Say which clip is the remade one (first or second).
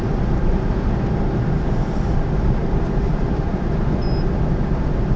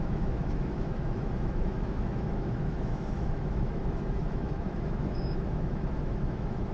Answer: second